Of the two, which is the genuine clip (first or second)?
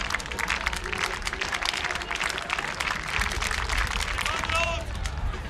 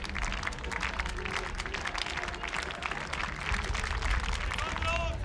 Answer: second